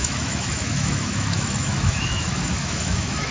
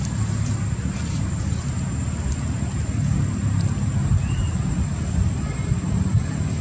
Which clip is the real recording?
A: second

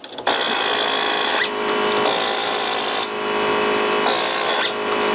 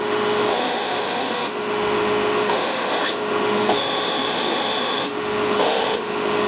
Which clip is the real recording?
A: first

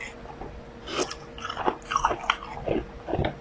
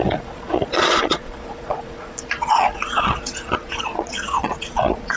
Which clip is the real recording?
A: first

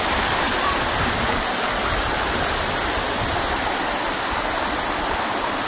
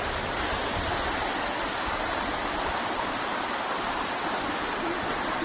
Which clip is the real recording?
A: second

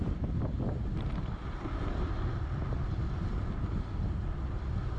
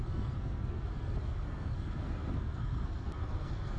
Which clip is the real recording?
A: first